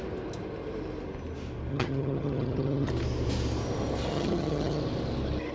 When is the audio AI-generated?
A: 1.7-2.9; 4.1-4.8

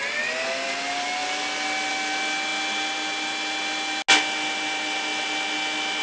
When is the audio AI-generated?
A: none

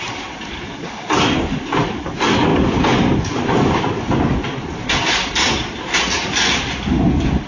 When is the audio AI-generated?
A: none

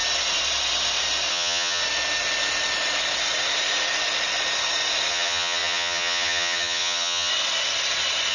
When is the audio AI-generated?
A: 1.3-1.8; 5.1-7.3